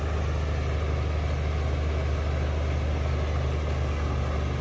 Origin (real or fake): real